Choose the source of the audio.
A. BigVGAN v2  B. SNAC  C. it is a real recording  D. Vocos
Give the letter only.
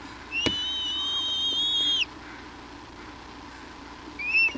C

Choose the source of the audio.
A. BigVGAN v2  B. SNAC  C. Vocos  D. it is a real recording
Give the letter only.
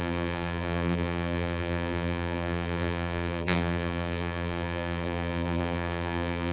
A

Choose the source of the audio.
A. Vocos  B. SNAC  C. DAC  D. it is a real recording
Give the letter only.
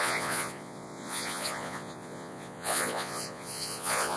A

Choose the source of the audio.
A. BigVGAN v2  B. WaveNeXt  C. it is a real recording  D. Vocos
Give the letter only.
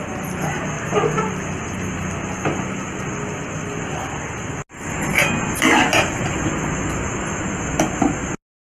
C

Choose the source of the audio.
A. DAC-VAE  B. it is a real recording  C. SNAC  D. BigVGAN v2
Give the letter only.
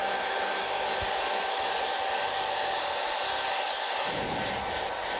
B